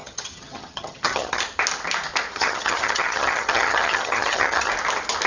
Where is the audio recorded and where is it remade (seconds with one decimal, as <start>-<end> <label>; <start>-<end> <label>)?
0.0-1.4 remade; 1.4-2.3 recorded; 2.3-4.7 remade; 4.7-5.3 recorded